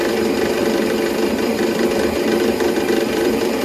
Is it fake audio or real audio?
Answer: fake